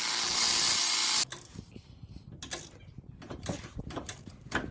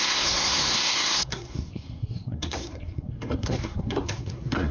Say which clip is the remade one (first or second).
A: second